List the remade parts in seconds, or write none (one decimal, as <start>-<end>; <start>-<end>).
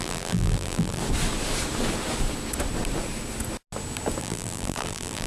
0.0-1.0; 4.2-5.3